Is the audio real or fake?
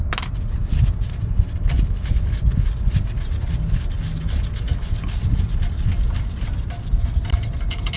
real